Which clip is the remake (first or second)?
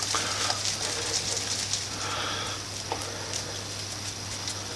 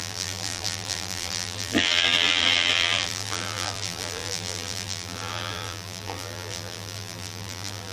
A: second